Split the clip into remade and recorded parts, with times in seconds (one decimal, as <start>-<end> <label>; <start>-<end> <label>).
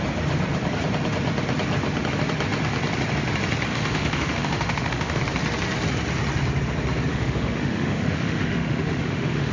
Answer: 0.0-3.7 recorded; 3.7-5.2 remade; 5.2-7.1 recorded; 7.1-9.5 remade